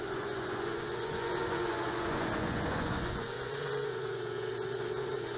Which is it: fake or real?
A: fake